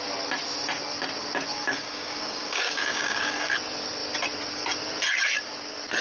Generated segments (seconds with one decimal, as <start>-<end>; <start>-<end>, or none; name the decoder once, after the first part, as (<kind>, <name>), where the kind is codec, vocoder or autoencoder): 1.5-3.5 (codec, DAC)